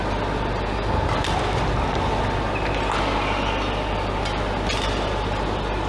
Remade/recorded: recorded